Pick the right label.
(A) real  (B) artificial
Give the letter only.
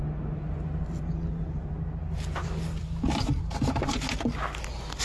A